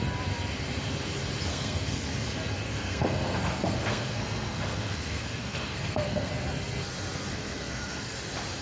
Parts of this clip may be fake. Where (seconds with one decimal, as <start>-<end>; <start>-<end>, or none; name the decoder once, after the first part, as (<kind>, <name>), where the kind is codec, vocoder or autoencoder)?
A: 1.5-2.1 (codec, SNAC); 2.7-6.3; 7.3-8.2